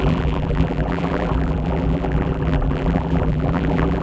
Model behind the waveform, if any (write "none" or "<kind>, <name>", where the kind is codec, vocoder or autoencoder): vocoder, BigVGAN v2